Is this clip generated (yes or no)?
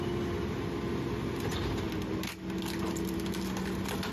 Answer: no